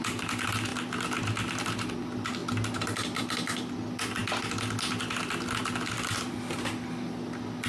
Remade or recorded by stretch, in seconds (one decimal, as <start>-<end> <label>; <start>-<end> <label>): 0.0-7.7 recorded